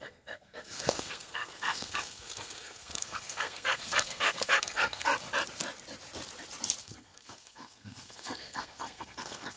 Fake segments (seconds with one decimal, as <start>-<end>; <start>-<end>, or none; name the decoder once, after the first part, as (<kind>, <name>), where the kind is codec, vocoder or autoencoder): 0.0-5.1 (codec, SNAC); 6.8-9.6